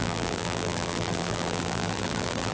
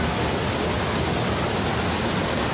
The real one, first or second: second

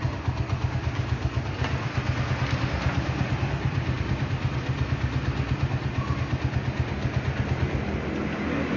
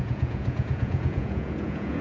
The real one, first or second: first